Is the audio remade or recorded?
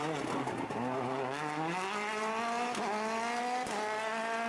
recorded